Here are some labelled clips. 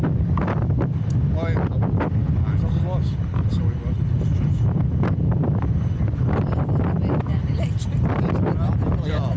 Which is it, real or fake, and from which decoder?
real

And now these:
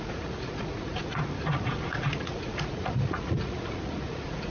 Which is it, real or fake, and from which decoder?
fake, vocoder, Vocos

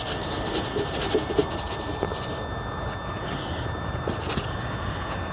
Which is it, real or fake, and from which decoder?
real